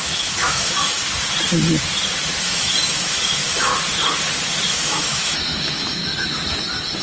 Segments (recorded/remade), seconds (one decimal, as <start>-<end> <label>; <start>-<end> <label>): 0.0-1.0 remade; 1.0-2.4 recorded; 2.4-3.7 remade; 3.7-4.7 recorded; 4.7-6.0 remade; 6.0-7.0 recorded